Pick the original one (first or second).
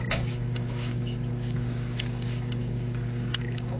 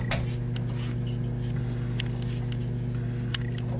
second